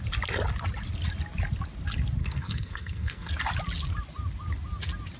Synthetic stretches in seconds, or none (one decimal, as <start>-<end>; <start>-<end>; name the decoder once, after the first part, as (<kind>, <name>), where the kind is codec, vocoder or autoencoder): 2.2-3.3 (codec, SNAC)